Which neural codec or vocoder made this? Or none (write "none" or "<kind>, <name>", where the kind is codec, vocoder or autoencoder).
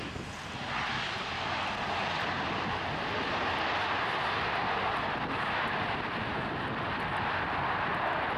none